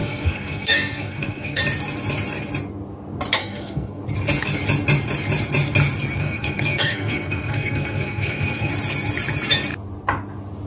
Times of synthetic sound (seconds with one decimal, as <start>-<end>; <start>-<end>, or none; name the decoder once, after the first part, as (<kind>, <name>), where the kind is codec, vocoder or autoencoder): 0.0-1.6 (codec, SNAC); 3.4-4.0; 6.2-8.7

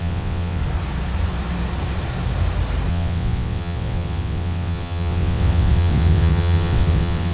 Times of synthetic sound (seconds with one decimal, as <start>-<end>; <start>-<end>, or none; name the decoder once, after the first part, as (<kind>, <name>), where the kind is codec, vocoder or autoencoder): 0.0-0.6 (vocoder, WaveNeXt); 2.9-7.3